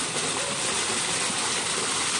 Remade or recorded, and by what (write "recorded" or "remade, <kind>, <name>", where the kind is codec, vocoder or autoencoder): recorded